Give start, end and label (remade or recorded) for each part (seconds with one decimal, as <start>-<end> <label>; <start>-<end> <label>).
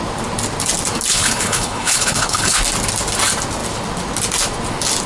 0.0-1.1 recorded; 1.1-2.6 remade; 2.6-5.1 recorded